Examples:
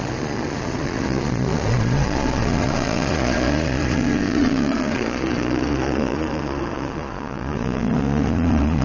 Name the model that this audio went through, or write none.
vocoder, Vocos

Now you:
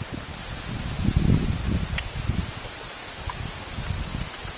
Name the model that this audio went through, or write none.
none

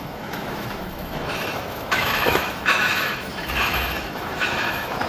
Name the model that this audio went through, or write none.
autoencoder, DAC-VAE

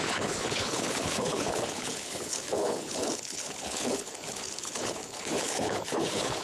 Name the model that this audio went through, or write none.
codec, HILCodec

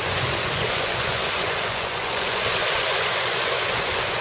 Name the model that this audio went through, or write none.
vocoder, Vocos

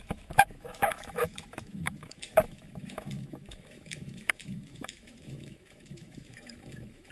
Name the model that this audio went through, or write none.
autoencoder, DAC-VAE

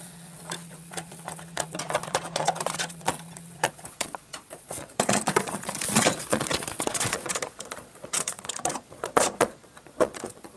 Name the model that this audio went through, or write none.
vocoder, Vocos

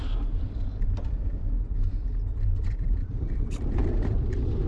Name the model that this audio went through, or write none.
vocoder, BigVGAN v2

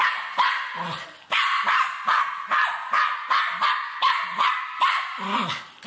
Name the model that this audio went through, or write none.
none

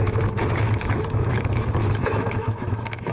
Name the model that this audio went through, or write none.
autoencoder, DAC-VAE